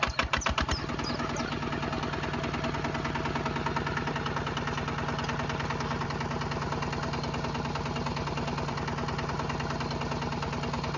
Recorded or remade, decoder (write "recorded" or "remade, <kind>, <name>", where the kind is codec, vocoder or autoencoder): recorded